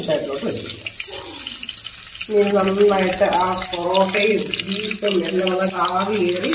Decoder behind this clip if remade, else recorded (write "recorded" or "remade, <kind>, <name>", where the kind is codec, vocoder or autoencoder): recorded